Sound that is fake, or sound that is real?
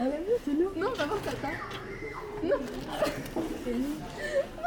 real